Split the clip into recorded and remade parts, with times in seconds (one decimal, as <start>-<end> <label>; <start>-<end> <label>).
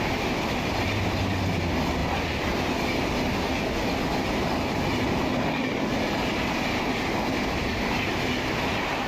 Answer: 0.0-2.0 recorded; 2.0-2.7 remade; 2.7-9.1 recorded